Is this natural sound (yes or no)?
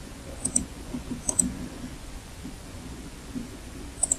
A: no